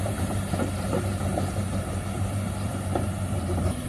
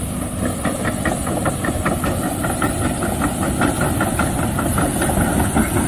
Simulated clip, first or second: first